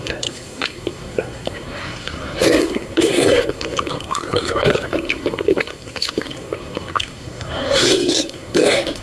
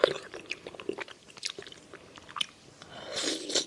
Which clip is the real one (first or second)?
second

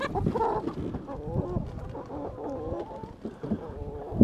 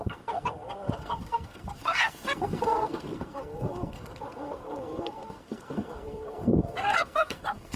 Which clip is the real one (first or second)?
first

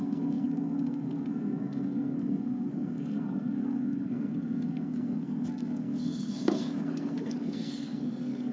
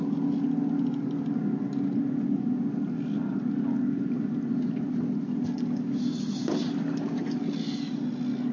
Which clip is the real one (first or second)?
second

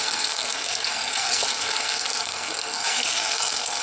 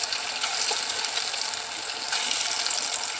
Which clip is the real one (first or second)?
second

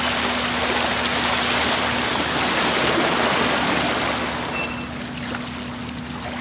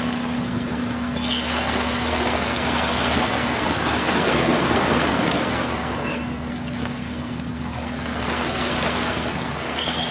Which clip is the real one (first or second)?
first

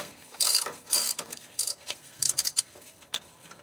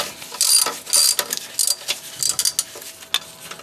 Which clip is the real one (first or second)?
second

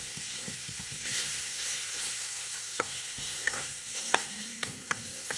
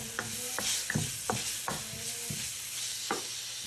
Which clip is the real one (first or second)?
second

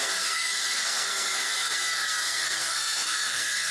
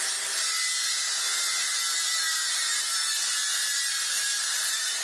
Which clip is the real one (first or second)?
second